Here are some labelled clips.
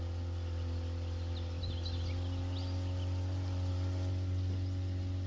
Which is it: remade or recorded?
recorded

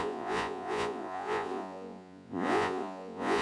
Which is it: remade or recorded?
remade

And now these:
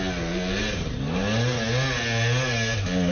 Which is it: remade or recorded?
recorded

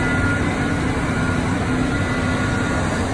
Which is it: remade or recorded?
recorded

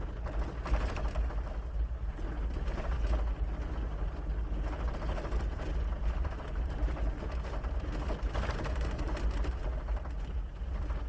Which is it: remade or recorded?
recorded